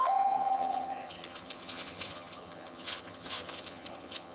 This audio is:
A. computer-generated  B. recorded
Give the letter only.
A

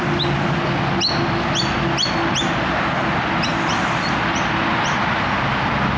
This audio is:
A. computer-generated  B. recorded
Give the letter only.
B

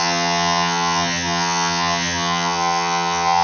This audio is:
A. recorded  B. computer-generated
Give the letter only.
B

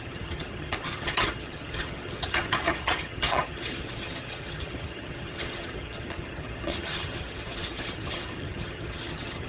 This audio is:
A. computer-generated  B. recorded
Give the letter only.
A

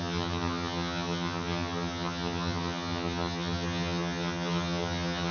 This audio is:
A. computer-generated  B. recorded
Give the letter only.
A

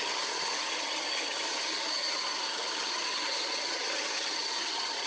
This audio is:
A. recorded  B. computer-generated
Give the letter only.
B